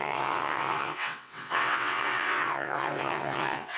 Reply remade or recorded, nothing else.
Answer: remade